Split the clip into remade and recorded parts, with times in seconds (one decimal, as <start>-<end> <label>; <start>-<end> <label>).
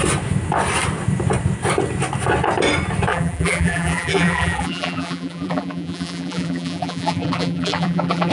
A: 0.0-3.1 recorded; 3.1-8.3 remade